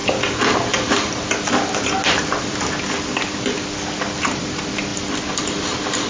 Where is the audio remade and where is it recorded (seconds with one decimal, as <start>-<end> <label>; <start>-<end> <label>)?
0.0-1.5 remade; 1.5-4.9 recorded; 4.9-5.4 remade; 5.4-6.1 recorded